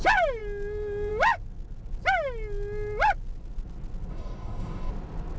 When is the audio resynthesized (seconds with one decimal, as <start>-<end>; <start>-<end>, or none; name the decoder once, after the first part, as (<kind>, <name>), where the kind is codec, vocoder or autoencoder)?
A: 4.1-4.9 (codec, DAC)